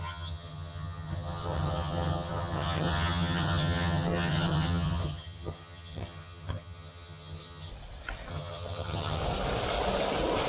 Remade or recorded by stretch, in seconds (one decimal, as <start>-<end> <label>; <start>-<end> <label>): 0.0-7.7 remade; 7.7-8.3 recorded; 8.3-9.2 remade; 9.2-10.5 recorded